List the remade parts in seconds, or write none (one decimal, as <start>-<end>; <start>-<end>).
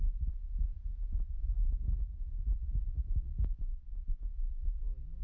3.7-4.3